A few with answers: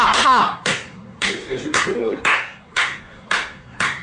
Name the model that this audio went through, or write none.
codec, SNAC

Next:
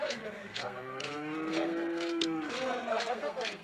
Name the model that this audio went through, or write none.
codec, SNAC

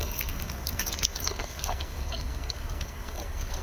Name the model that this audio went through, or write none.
codec, SNAC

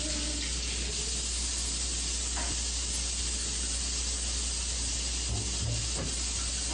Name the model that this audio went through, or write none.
none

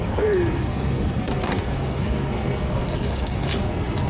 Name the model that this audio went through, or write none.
codec, SNAC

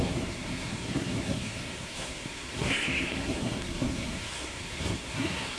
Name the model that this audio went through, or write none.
codec, SNAC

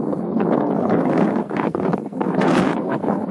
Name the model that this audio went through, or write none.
codec, SNAC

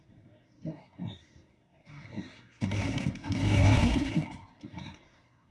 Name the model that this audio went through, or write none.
codec, SNAC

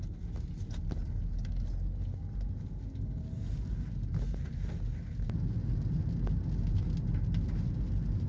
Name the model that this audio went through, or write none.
none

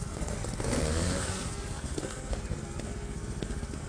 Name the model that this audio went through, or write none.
codec, SNAC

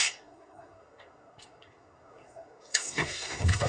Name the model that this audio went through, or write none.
codec, SNAC